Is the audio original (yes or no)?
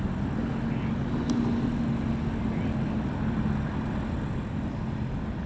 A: yes